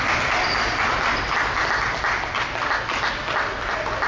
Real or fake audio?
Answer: real